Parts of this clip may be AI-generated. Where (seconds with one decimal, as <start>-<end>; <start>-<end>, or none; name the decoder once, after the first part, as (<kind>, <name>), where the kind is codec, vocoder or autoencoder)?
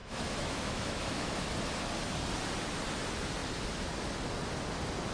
0.0-1.4 (autoencoder, DAC-VAE)